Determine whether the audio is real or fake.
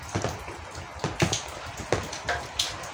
real